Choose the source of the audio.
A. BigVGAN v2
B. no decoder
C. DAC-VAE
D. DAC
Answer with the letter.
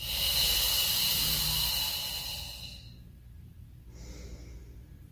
B